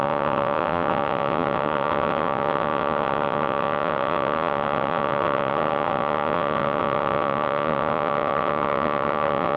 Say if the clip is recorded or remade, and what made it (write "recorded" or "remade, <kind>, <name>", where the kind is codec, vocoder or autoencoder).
remade, vocoder, WaveNeXt